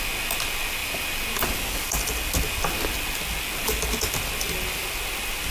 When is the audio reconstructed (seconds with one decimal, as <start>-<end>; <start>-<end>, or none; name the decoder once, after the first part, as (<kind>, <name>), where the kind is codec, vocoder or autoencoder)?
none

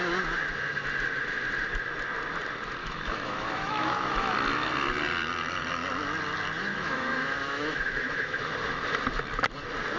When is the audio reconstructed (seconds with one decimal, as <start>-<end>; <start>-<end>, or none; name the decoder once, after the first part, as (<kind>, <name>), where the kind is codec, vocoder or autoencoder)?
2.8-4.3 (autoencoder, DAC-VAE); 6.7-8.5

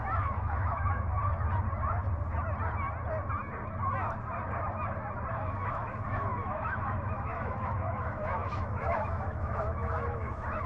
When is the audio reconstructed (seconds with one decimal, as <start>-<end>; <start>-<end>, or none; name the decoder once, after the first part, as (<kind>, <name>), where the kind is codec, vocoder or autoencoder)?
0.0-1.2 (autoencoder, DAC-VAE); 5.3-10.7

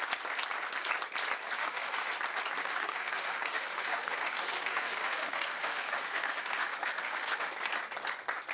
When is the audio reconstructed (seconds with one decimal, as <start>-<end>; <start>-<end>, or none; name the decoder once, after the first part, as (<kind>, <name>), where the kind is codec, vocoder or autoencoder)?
1.6-2.1 (autoencoder, DAC-VAE); 2.6-7.5

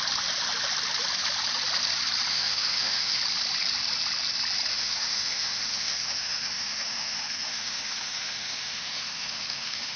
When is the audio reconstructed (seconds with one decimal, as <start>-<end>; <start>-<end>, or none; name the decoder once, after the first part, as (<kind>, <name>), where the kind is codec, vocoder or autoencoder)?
2.3-3.2 (autoencoder, DAC-VAE); 4.7-10.0

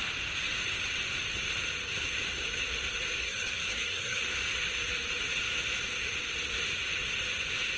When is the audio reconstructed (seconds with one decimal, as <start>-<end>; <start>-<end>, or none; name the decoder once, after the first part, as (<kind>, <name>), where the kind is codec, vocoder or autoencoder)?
3.2-4.2 (codec, SNAC)

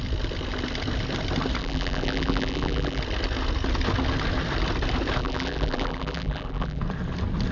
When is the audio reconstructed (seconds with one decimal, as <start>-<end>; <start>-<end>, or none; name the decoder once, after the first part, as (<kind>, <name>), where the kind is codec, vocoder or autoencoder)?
1.6-3.0 (vocoder, BigVGAN v2); 5.2-6.8

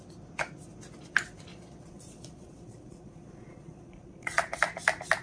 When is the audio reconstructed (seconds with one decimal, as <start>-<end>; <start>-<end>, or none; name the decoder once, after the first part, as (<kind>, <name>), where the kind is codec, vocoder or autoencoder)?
1.5-4.6 (vocoder, Vocos)